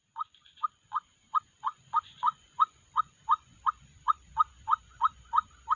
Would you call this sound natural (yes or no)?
no